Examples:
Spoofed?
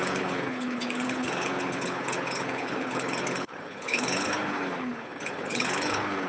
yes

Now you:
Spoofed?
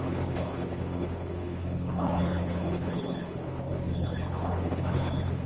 yes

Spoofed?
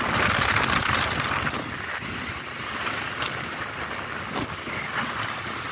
no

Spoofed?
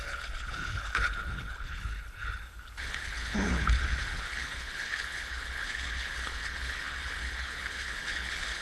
yes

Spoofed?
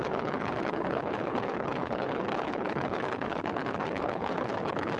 yes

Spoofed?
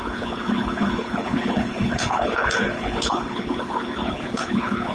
yes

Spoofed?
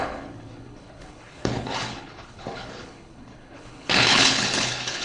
yes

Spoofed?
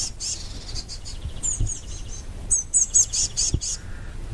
no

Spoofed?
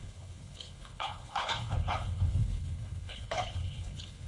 yes